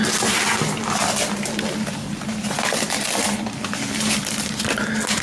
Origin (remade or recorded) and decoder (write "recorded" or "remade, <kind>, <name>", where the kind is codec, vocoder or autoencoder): recorded